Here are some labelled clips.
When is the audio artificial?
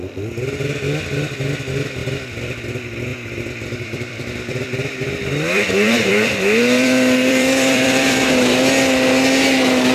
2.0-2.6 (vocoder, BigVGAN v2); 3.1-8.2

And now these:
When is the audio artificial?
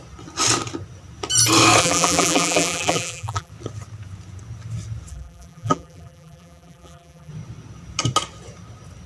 1.8-3.5 (vocoder, BigVGAN v2); 5.1-7.3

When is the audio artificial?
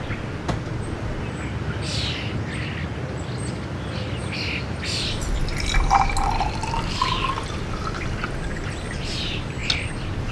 none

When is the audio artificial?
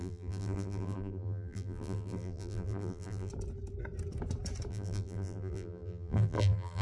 0.0-3.3 (vocoder, BigVGAN v2); 4.7-6.8